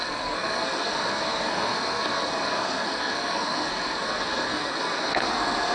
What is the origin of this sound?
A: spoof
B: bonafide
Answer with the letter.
A